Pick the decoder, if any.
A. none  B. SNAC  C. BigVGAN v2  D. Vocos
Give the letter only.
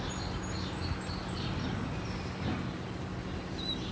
A